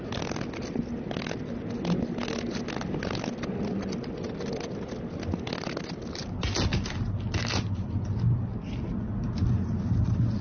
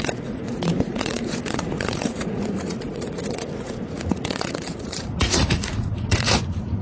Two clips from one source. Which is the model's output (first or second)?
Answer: second